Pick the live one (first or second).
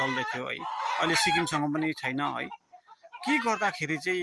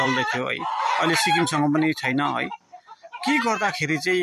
first